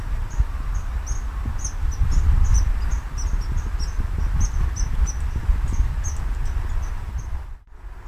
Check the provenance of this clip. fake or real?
real